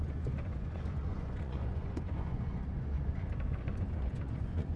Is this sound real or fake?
fake